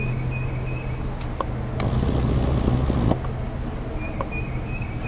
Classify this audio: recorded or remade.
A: recorded